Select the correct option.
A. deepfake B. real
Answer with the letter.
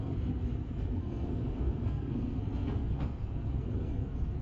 A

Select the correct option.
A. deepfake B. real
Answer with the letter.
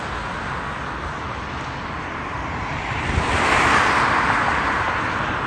B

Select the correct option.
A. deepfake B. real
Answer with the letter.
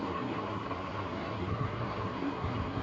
A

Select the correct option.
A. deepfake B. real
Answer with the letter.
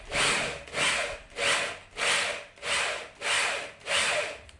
B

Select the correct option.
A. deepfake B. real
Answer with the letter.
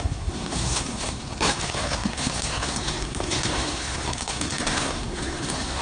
A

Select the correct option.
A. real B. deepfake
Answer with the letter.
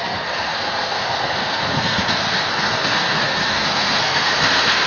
B